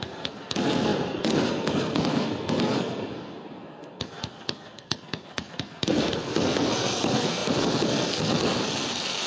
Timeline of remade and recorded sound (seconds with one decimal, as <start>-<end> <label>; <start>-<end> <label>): 0.0-9.3 remade

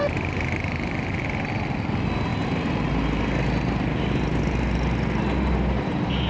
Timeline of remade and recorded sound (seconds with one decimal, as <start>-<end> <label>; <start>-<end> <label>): 0.0-6.3 recorded

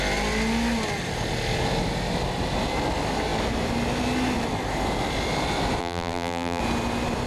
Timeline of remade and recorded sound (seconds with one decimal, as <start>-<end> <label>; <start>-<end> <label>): 0.0-5.8 recorded; 5.8-6.6 remade; 6.6-7.3 recorded

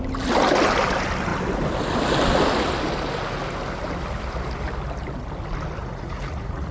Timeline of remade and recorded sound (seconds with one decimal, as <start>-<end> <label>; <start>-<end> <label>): 0.0-5.8 recorded; 5.8-6.7 remade

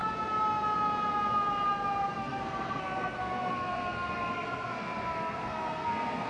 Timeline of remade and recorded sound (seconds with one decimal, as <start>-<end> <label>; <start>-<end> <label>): 0.0-2.2 recorded; 2.2-6.3 remade

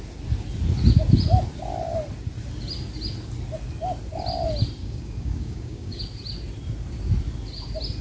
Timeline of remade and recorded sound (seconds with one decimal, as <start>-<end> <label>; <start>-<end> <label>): 0.0-4.8 recorded; 4.8-6.0 remade; 6.0-8.0 recorded

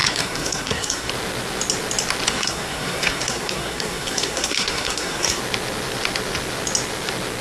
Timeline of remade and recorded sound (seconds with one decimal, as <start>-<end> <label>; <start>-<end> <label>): 0.0-1.1 remade; 1.1-2.3 recorded; 2.3-5.4 remade; 5.4-7.4 recorded